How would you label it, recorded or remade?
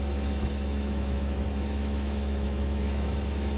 remade